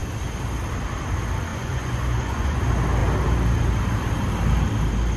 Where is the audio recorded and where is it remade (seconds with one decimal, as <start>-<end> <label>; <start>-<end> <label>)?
0.0-1.5 recorded; 1.5-2.6 remade; 2.6-5.2 recorded